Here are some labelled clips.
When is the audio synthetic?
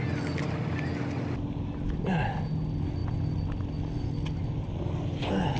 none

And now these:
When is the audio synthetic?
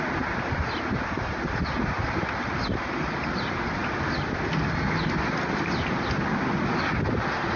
none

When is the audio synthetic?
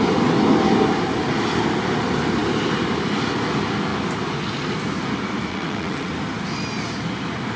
5.5-6.1 (vocoder, WaveNeXt)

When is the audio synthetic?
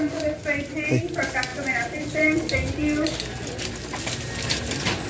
none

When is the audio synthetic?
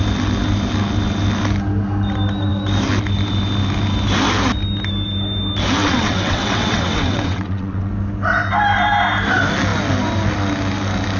5.8-7.9 (vocoder, WaveNeXt)